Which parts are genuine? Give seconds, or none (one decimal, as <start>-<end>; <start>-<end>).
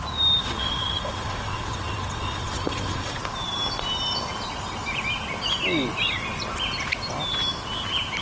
0.0-0.4; 3.2-8.2